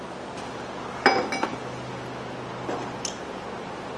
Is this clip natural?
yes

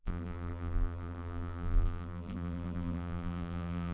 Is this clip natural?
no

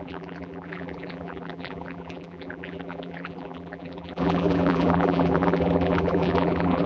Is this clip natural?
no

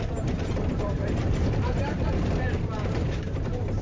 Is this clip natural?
no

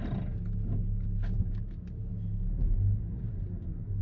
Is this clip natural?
yes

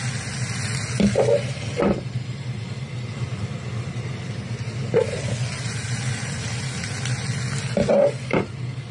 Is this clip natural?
yes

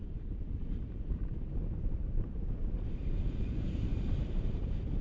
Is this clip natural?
no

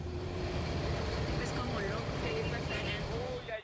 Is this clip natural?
no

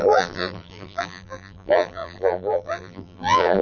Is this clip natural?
no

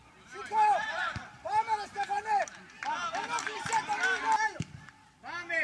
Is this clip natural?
no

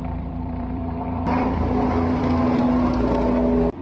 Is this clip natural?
no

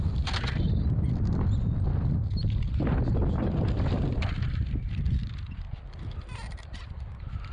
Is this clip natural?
no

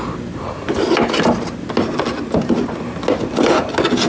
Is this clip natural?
yes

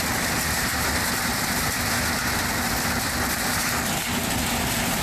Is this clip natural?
no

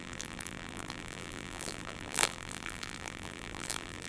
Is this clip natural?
no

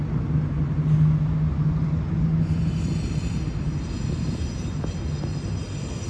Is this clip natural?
yes